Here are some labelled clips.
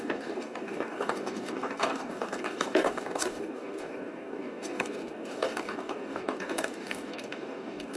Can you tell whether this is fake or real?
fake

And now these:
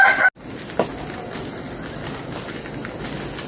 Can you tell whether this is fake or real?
real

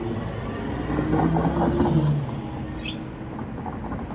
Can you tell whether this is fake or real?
real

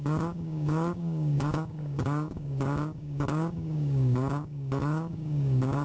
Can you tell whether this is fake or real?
fake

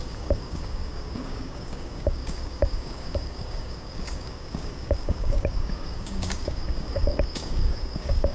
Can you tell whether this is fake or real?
fake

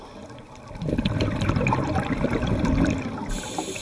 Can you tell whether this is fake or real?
real